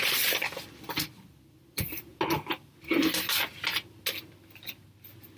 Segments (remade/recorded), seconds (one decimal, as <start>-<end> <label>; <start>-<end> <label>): 0.0-2.1 remade; 2.1-5.4 recorded